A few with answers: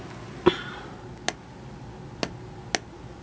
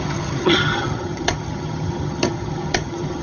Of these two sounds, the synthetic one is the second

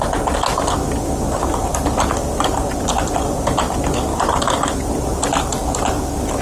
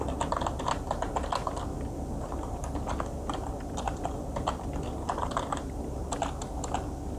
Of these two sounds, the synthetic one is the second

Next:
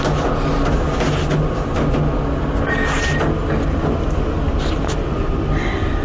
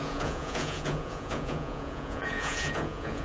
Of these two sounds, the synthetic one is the second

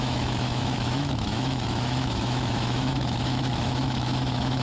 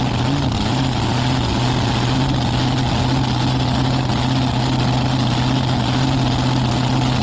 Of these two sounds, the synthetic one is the first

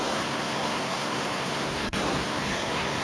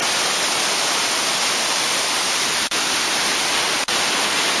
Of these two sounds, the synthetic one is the first